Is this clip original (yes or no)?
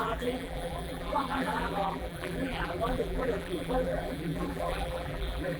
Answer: no